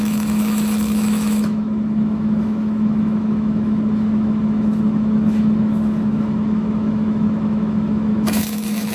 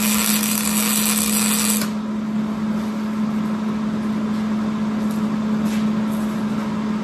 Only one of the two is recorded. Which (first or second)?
second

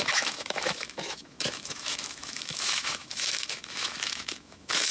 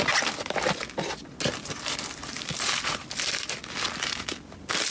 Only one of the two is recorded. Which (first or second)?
second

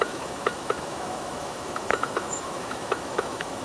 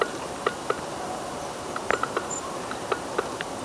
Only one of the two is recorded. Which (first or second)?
second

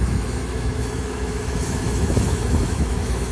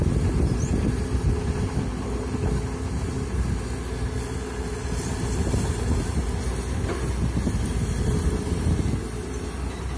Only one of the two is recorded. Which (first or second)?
second